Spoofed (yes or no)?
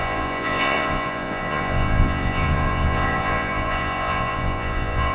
yes